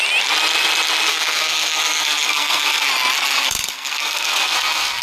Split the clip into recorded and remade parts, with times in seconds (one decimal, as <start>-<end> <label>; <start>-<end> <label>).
0.0-1.1 recorded; 1.1-2.9 remade; 2.9-3.3 recorded; 3.3-5.0 remade